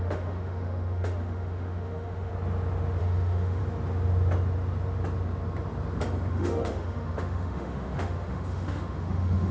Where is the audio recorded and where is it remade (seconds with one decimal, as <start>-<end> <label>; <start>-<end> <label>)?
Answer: 0.0-2.3 remade; 2.3-3.0 recorded; 3.0-3.6 remade; 3.6-6.3 recorded; 6.3-9.5 remade